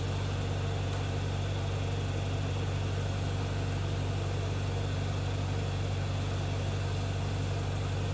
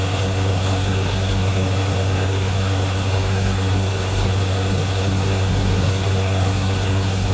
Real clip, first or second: first